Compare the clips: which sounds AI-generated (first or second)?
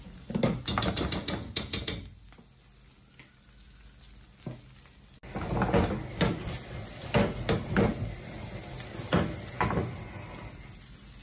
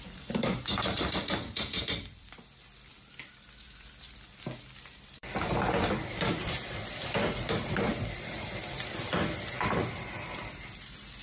second